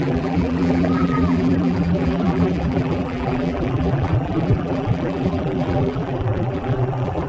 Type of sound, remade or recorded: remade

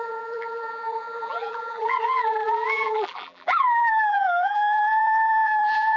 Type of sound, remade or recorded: remade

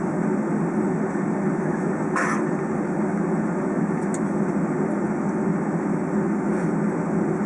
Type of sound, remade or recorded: recorded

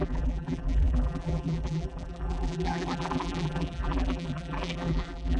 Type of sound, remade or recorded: remade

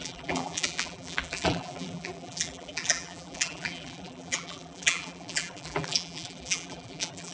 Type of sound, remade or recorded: remade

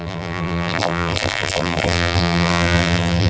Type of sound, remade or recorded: remade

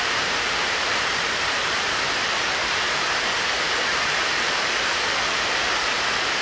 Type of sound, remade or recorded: remade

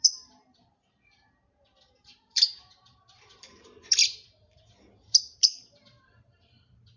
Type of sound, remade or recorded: remade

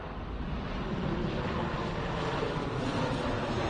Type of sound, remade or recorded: recorded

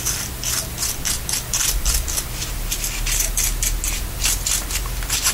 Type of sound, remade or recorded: recorded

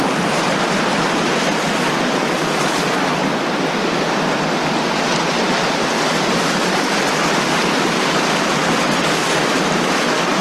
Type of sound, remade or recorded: recorded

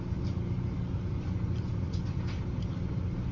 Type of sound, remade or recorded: recorded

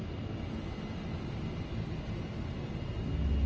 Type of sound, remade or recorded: recorded